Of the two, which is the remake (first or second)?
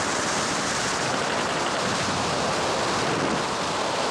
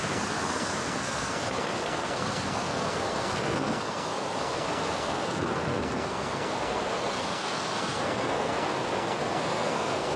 second